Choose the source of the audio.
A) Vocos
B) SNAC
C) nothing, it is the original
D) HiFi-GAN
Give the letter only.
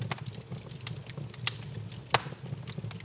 C